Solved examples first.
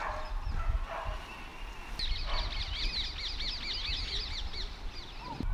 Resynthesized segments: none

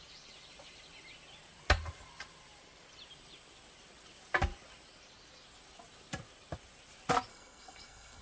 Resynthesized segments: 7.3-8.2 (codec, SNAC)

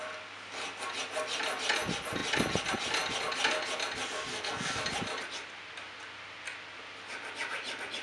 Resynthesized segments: 4.3-4.8 (codec, SNAC)

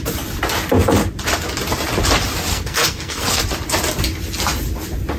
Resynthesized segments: 2.5-3.4 (codec, SNAC)